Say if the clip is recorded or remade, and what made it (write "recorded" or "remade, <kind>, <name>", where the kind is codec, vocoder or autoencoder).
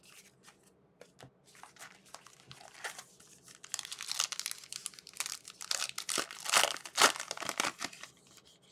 recorded